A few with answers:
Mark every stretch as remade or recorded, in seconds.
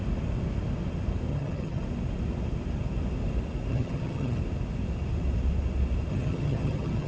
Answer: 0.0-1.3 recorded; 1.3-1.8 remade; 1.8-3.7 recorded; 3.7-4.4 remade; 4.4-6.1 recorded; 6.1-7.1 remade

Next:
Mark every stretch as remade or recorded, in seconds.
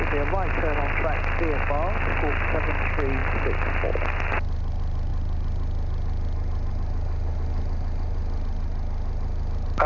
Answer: 0.0-9.9 recorded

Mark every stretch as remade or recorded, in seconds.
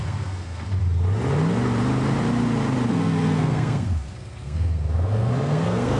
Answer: 0.0-0.8 remade; 0.8-2.9 recorded; 2.9-6.0 remade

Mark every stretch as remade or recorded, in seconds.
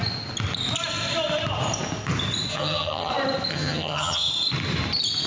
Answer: 0.0-2.5 recorded; 2.5-3.1 remade; 3.1-3.5 recorded; 3.5-4.3 remade; 4.3-5.3 recorded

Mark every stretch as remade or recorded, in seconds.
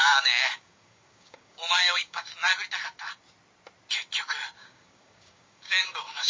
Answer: 0.0-2.5 remade; 2.5-4.6 recorded; 4.6-6.3 remade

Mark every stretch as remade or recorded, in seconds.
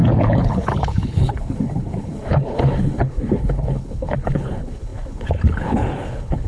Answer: 0.0-6.5 remade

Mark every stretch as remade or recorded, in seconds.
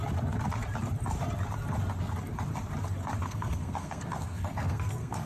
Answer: 0.0-3.2 recorded; 3.2-5.3 remade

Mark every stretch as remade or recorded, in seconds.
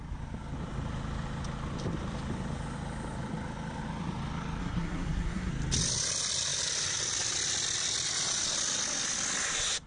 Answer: 0.0-4.6 recorded; 4.6-5.5 remade; 5.5-9.9 recorded